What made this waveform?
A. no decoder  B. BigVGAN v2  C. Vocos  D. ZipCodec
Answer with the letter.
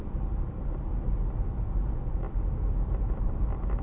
A